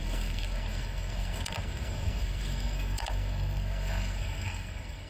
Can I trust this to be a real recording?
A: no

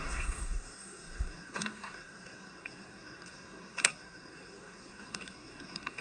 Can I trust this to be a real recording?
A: no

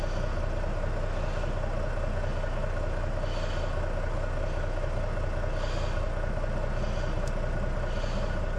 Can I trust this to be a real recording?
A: yes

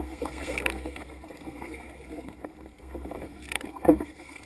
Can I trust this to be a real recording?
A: no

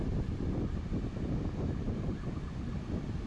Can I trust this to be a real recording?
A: yes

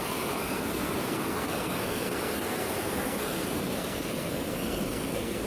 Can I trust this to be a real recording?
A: no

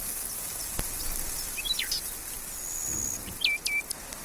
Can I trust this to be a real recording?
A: yes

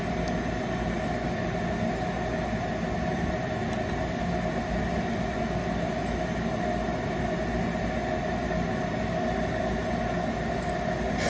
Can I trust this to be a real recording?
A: yes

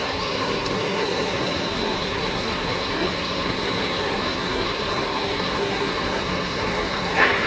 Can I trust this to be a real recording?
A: no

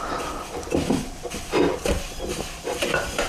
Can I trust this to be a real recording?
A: yes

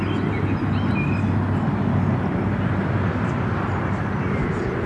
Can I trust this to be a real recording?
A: yes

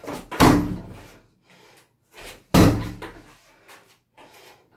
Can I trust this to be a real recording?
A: yes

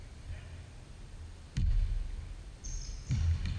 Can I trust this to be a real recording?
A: yes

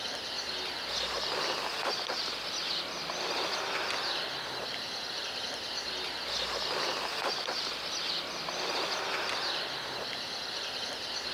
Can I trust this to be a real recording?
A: yes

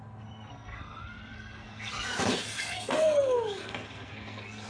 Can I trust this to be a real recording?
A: no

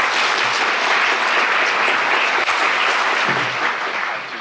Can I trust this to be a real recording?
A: yes